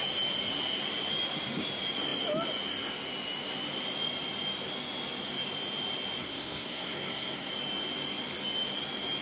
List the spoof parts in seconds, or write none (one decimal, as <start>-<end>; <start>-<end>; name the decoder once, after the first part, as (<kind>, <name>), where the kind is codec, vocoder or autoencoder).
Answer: 6.2-7.5 (codec, SNAC)